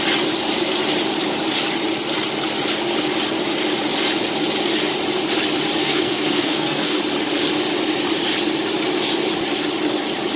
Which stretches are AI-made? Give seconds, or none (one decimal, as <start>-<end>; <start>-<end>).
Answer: 5.8-7.0